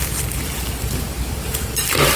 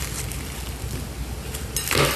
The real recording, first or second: second